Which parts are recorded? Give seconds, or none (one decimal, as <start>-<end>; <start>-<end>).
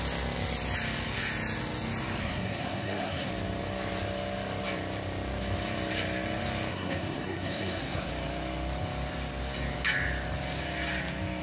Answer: 0.0-2.2; 3.3-6.7; 8.1-11.4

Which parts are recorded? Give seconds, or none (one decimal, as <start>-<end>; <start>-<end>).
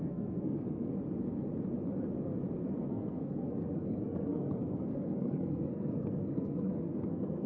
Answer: 0.9-2.9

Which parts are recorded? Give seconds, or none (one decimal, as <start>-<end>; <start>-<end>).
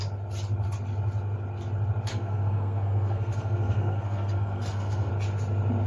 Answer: 0.0-2.1; 5.1-5.9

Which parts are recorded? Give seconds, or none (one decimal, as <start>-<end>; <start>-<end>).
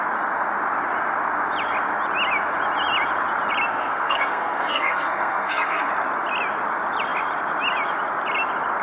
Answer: 0.0-3.7; 5.9-8.8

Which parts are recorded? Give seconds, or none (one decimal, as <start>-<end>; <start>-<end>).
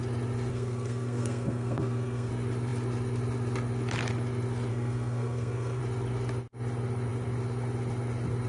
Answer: 0.0-0.5; 2.3-4.7; 5.8-8.5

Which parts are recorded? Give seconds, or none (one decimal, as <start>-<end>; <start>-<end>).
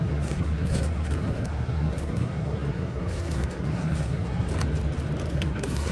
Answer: 4.5-5.3